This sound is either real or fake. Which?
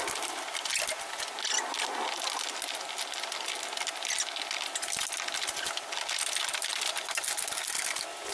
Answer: real